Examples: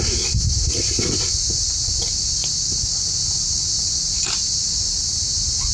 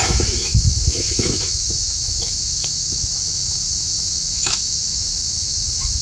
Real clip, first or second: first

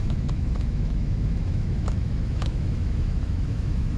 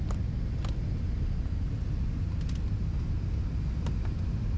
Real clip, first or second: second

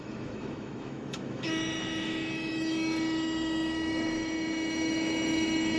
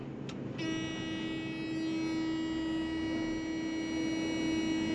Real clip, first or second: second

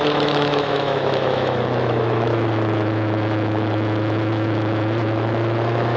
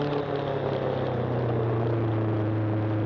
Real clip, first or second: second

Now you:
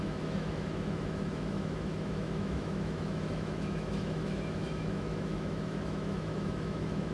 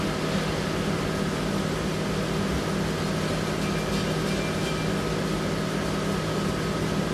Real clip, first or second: second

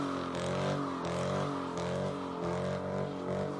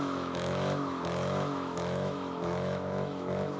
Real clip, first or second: first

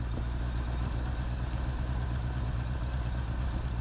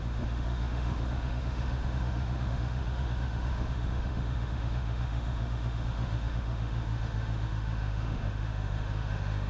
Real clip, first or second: first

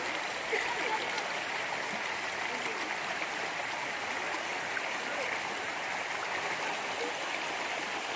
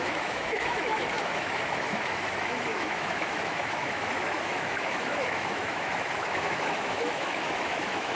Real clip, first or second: first